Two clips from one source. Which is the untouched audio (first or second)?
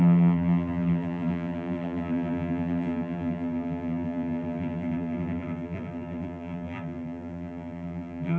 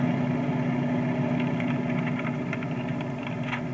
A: second